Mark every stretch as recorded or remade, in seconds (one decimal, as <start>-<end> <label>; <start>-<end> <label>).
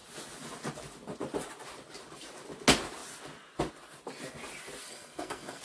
0.0-4.8 recorded; 4.8-5.6 remade